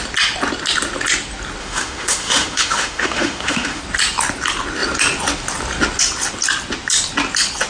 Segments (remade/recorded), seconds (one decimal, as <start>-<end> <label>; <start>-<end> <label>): 0.0-1.6 recorded; 1.6-3.8 remade; 3.8-7.7 recorded